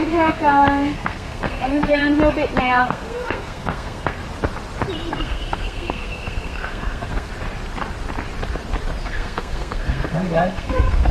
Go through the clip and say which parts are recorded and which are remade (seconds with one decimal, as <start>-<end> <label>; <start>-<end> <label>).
0.0-2.0 remade; 2.0-2.6 recorded; 2.6-4.2 remade; 4.2-5.1 recorded; 5.1-7.3 remade; 7.3-9.0 recorded; 9.0-11.1 remade